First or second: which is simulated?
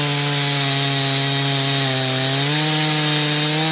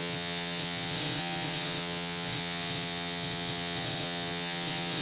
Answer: second